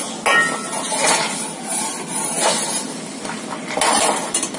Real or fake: real